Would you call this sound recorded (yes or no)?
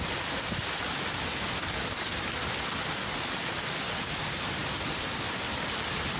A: yes